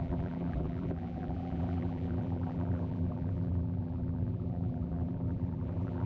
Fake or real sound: fake